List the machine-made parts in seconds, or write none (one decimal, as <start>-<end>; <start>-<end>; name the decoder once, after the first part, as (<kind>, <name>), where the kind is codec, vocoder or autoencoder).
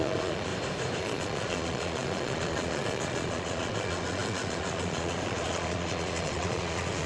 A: 0.0-0.5 (vocoder, Vocos); 1.0-7.1